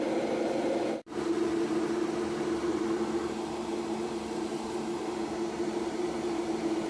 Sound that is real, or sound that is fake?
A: fake